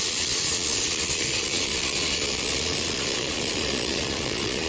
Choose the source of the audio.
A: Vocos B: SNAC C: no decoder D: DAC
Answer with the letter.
A